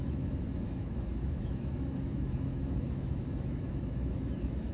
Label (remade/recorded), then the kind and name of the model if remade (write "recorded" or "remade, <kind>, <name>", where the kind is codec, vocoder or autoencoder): remade, autoencoder, DAC-VAE